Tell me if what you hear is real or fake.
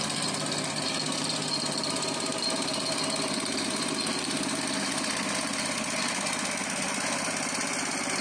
real